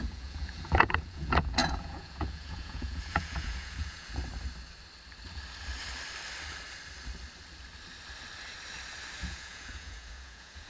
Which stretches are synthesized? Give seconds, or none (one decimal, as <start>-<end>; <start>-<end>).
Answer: 0.0-4.2; 9.2-10.7